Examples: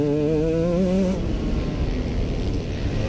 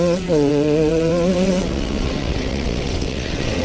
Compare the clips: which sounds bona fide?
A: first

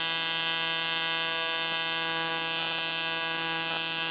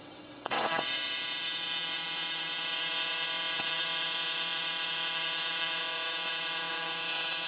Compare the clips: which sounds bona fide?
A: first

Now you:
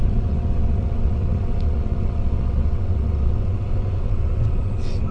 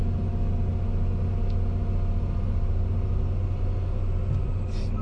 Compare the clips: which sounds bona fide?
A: second